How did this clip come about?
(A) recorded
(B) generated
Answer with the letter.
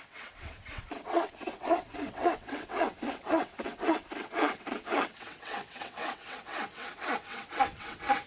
B